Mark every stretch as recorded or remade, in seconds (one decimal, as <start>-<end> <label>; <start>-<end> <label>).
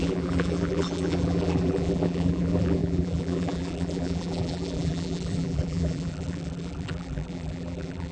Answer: 0.0-8.1 remade